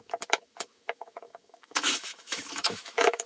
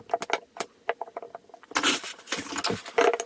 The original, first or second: second